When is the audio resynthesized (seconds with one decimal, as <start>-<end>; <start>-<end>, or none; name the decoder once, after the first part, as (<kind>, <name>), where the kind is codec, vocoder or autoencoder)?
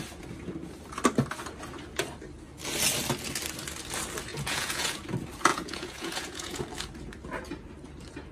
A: 4.3-5.0 (vocoder, Vocos); 5.5-6.6